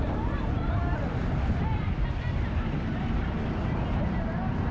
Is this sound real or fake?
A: fake